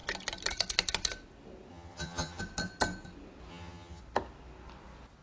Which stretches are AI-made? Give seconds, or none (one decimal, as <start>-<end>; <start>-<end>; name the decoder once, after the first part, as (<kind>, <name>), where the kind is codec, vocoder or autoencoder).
1.7-2.4 (vocoder, HiFi-GAN); 3.5-4.0